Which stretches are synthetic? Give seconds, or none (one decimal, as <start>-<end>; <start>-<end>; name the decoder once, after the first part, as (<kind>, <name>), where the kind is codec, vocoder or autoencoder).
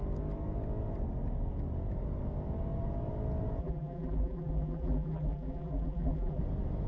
3.6-6.4 (vocoder, BigVGAN v2)